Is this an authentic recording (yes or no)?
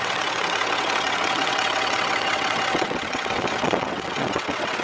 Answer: no